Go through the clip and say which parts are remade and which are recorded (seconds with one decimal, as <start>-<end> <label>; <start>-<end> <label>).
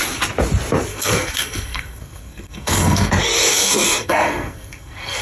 0.0-0.9 recorded; 0.9-3.1 remade; 3.1-3.5 recorded; 3.5-5.2 remade